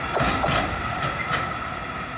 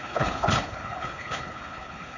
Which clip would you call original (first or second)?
first